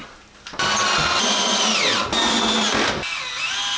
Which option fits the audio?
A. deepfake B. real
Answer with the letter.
B